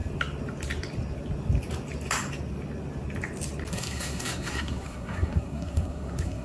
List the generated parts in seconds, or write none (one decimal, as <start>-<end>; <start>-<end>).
3.7-6.4